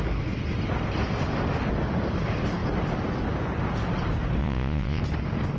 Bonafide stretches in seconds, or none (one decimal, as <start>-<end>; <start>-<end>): 0.0-4.4; 5.0-5.6